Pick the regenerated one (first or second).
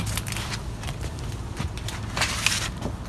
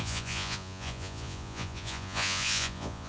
second